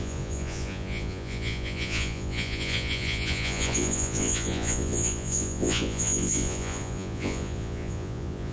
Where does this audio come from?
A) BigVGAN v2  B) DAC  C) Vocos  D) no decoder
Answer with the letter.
C